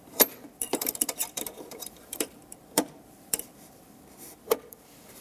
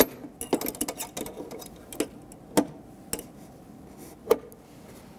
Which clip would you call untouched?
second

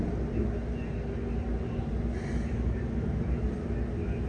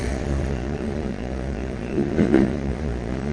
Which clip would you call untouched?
first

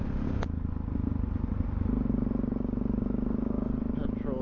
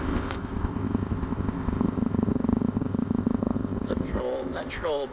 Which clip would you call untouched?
first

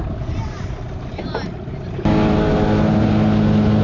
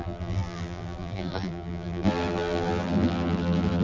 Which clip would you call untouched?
first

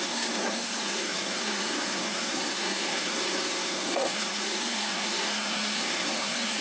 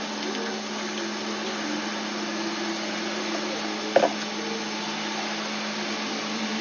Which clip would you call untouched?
second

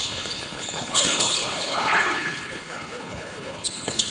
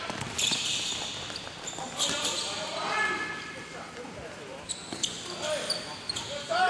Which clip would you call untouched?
second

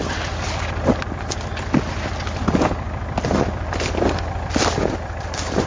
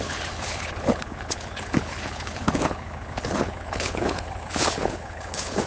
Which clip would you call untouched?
first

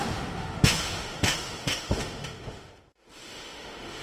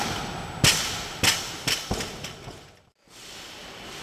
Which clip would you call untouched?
second